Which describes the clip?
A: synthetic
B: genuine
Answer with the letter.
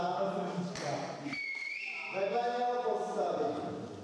B